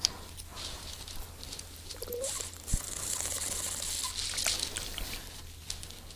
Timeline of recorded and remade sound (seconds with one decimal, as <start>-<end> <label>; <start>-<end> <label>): 0.0-0.5 recorded; 0.5-3.6 remade; 3.6-6.2 recorded